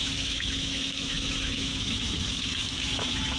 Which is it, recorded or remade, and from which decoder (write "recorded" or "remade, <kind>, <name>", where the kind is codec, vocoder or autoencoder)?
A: remade, autoencoder, DAC-VAE